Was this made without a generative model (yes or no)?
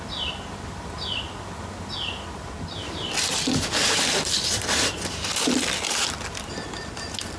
yes